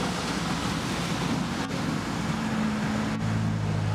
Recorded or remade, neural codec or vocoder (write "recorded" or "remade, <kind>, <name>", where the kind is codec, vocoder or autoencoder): recorded